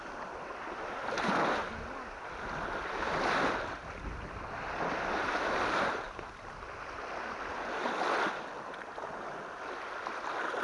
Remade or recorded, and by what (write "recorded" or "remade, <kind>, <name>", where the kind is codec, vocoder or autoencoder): recorded